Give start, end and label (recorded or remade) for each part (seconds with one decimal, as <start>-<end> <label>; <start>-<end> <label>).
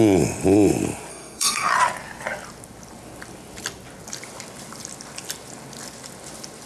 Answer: 0.0-1.1 recorded; 1.1-1.7 remade; 1.7-6.7 recorded